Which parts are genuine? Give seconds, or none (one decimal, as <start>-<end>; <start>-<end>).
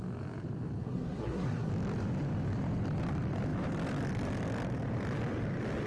0.0-0.8; 1.7-5.9